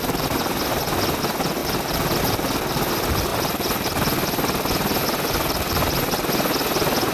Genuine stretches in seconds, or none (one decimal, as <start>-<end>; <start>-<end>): 0.0-7.1